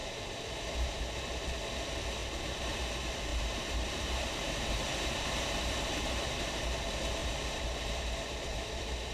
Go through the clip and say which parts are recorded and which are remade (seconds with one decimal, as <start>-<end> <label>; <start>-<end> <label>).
0.0-1.0 remade; 1.0-2.2 recorded; 2.2-2.8 remade; 2.8-3.3 recorded; 3.3-6.6 remade; 6.6-7.2 recorded; 7.2-8.1 remade; 8.1-9.1 recorded